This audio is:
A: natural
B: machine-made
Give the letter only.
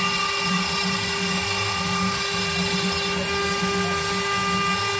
A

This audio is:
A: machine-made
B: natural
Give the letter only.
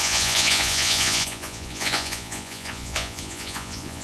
A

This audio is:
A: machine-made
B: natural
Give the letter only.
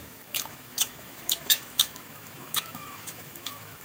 A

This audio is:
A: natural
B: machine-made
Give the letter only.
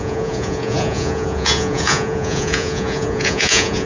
B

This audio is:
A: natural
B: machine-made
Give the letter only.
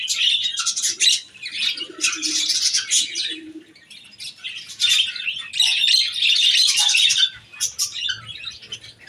A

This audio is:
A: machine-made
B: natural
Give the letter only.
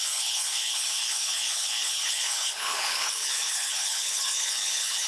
A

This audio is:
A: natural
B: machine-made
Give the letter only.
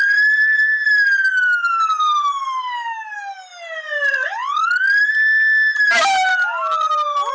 A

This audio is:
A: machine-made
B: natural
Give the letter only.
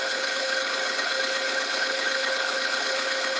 A